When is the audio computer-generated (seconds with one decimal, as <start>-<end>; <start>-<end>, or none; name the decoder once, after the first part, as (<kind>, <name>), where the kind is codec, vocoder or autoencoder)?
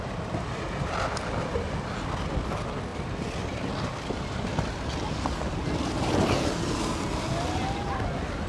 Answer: none